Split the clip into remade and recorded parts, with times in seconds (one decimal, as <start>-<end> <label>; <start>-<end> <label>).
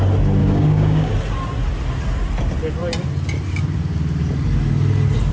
0.0-0.4 recorded; 0.4-1.1 remade; 1.1-5.3 recorded